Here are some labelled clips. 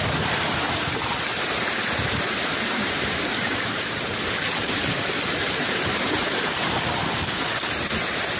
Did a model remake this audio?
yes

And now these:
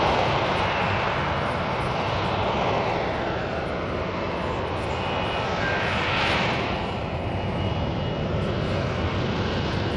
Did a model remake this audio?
no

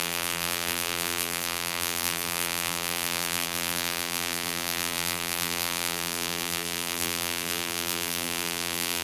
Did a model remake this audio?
yes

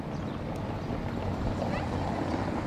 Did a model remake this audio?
no